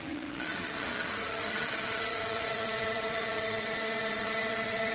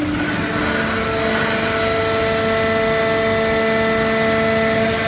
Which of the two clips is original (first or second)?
second